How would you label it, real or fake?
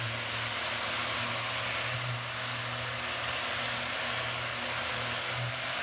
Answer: real